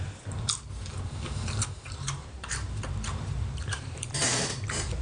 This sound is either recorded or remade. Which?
remade